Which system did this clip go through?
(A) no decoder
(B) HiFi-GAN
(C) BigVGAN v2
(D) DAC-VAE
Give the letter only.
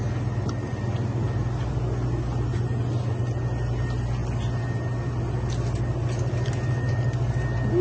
A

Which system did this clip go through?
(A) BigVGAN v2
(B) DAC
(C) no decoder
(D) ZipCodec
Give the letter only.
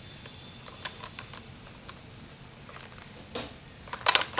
C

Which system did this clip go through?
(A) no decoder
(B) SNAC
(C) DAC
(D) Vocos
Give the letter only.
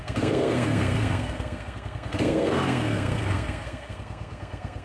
B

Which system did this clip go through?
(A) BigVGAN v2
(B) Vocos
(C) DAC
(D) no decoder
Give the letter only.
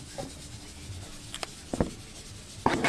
D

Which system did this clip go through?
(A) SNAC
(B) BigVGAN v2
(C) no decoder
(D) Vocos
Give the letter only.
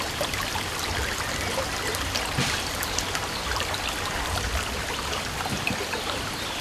B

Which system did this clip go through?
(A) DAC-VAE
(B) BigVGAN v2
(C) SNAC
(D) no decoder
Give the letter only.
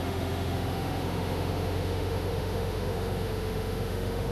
A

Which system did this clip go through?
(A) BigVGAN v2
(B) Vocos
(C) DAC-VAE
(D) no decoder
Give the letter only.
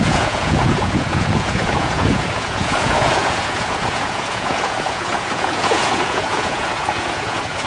B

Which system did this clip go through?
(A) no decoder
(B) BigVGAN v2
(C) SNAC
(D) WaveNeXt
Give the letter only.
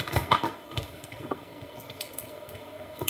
C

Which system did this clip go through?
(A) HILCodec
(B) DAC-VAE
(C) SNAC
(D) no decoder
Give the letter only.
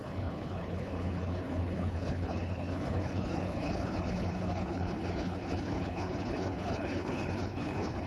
A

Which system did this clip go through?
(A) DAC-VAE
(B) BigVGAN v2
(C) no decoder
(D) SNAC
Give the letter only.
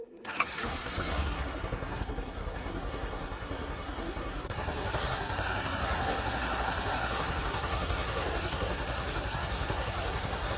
D